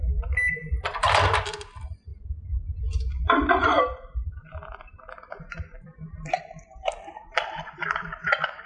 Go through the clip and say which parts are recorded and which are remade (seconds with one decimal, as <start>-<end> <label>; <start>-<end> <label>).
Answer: 0.0-8.7 remade